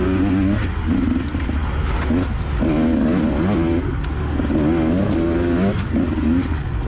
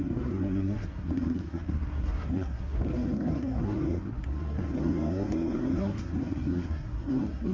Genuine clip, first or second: first